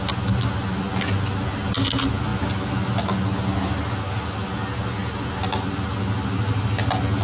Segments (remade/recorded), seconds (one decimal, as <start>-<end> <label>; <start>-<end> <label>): 0.0-7.2 recorded